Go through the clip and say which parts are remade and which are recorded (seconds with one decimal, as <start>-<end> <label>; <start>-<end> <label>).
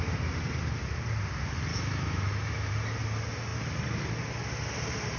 0.0-1.7 recorded; 1.7-2.7 remade; 2.7-5.2 recorded